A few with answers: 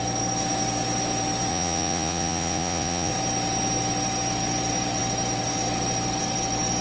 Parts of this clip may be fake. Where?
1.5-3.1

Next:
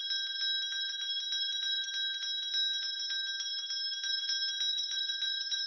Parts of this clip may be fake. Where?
4.7-5.7